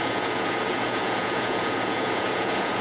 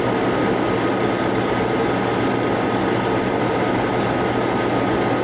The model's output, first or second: first